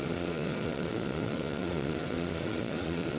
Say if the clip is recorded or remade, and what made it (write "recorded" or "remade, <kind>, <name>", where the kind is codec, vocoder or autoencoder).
remade, vocoder, Vocos